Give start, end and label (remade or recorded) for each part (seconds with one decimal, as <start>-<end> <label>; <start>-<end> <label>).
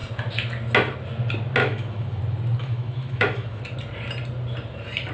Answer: 0.0-1.6 recorded; 1.6-2.2 remade; 2.2-2.6 recorded; 2.6-3.6 remade; 3.6-5.1 recorded